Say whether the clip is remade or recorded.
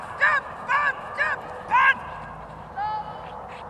recorded